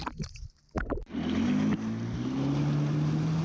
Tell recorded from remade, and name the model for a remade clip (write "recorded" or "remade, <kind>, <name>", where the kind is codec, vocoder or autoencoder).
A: recorded